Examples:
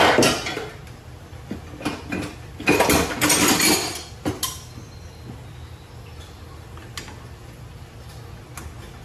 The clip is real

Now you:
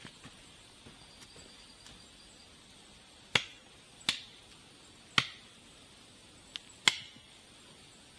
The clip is real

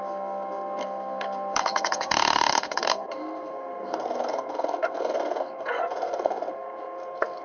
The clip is fake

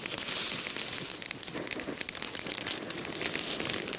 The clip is real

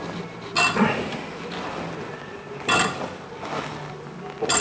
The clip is real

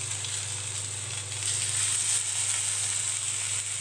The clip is real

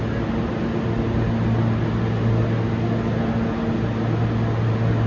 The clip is real